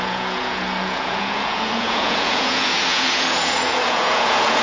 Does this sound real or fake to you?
fake